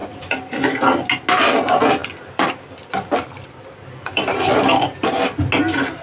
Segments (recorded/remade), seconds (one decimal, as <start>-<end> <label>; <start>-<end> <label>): 0.0-0.7 remade; 0.7-2.0 recorded; 2.0-5.2 remade; 5.2-6.0 recorded